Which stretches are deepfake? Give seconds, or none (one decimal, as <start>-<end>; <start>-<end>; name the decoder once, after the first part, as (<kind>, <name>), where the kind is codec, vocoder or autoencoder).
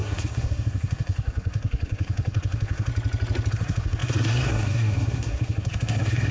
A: 0.0-2.9 (codec, SNAC); 3.5-6.3